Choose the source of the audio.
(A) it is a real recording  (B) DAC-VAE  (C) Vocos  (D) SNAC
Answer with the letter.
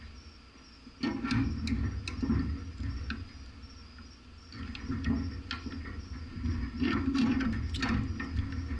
A